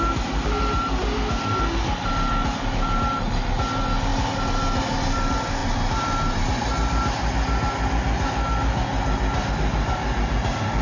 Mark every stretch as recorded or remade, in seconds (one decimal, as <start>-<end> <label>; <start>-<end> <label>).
0.0-10.8 recorded

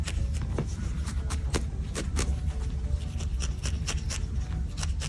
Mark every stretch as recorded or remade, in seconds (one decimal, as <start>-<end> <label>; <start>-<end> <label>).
0.0-0.7 recorded; 0.7-2.4 remade; 2.4-5.1 recorded